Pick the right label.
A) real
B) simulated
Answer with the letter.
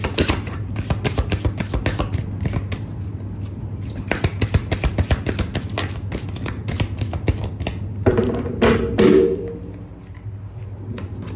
A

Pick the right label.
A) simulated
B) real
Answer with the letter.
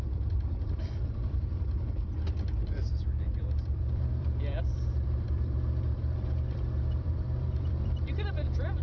A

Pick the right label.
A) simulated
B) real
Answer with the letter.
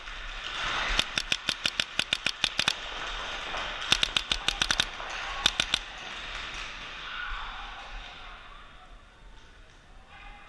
B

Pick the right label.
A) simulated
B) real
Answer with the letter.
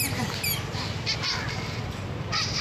B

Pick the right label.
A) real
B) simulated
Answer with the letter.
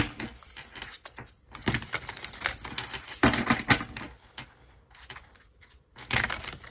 A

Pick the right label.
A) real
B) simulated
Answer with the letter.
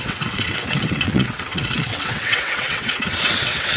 B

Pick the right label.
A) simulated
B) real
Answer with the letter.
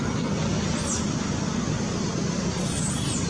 B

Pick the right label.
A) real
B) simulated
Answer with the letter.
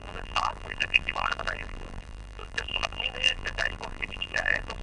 B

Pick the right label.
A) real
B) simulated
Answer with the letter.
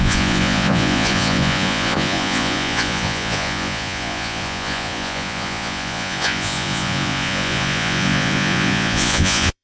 B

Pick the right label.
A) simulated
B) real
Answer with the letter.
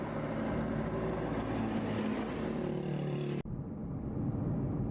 B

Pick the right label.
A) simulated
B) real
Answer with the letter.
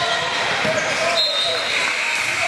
B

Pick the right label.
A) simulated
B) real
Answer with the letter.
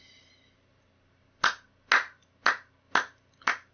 B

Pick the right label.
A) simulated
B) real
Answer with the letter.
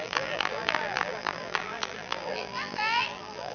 A